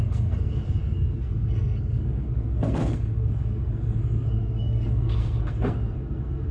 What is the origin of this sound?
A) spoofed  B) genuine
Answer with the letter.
A